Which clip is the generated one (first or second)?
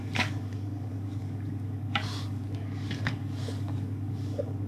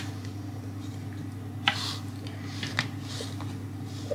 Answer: first